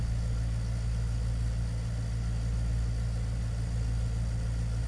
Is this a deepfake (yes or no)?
no